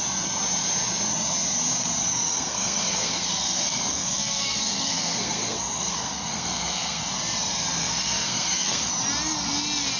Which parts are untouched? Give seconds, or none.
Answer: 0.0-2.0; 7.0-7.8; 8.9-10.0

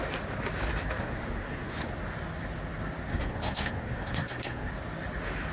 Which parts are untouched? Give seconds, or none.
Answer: 0.0-1.0; 1.9-3.1; 4.7-5.5